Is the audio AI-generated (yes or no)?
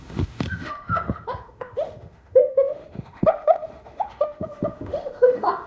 yes